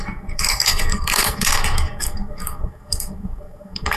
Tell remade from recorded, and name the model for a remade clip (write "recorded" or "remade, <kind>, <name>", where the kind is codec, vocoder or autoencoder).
remade, codec, SNAC